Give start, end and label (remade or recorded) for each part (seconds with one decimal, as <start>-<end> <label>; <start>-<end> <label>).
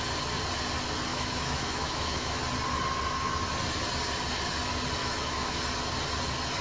0.0-1.1 recorded; 1.1-2.4 remade; 2.4-5.0 recorded; 5.0-5.6 remade; 5.6-6.6 recorded